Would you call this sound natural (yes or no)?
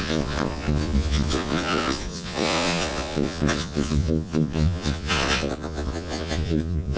no